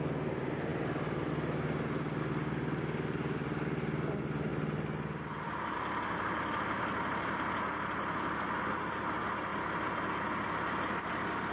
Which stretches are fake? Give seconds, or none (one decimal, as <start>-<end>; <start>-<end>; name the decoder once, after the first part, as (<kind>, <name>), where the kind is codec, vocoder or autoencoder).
none